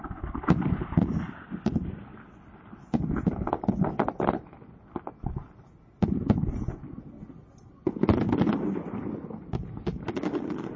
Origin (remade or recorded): recorded